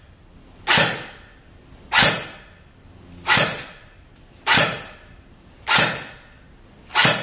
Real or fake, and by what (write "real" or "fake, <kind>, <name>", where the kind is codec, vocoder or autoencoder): real